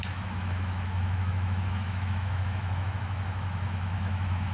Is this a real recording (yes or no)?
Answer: no